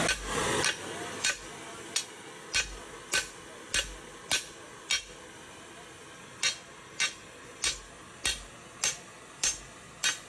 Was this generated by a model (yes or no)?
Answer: no